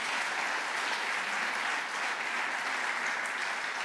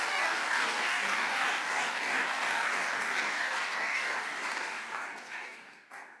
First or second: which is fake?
second